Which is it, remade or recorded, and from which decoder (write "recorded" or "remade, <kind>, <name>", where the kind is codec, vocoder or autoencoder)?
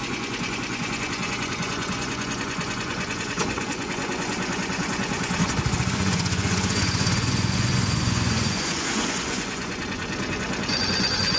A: remade, vocoder, Vocos